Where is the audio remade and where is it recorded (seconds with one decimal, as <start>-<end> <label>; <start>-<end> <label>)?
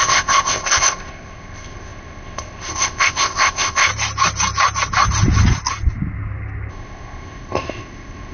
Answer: 0.0-3.9 remade; 3.9-6.7 recorded; 6.7-8.3 remade